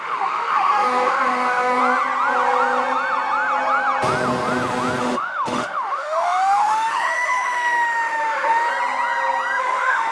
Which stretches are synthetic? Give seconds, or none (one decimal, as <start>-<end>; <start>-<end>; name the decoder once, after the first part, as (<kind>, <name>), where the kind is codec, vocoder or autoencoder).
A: 0.0-1.8 (autoencoder, DAC-VAE); 5.0-8.7; 9.6-10.1